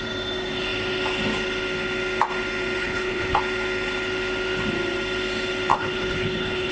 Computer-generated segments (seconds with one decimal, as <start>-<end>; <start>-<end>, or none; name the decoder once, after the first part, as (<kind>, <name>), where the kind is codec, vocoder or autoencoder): 2.8-3.4 (codec, HILCodec); 5.7-6.7